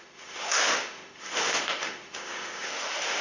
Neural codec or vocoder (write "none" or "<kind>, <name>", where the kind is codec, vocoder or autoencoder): autoencoder, DAC-VAE